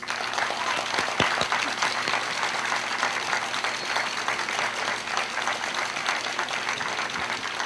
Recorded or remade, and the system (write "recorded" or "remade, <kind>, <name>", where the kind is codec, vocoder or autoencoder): recorded